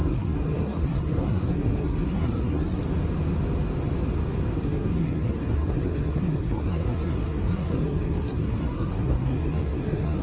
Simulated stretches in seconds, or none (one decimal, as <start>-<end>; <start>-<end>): 0.0-2.8; 4.6-10.2